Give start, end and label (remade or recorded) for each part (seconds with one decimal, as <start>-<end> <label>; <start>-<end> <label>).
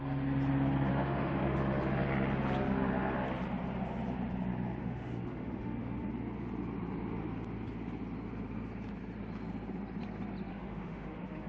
0.0-0.9 recorded; 0.9-1.6 remade; 1.6-4.8 recorded; 4.8-6.1 remade; 6.1-10.5 recorded; 10.5-11.5 remade